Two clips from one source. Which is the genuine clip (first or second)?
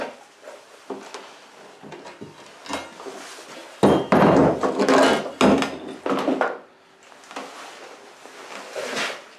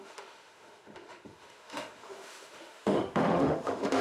first